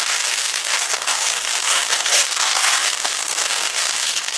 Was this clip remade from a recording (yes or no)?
yes